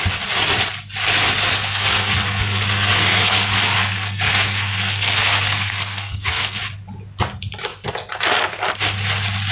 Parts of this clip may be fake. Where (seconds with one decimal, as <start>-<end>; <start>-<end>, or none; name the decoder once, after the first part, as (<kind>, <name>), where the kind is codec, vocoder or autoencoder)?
1.5-6.6 (codec, SNAC)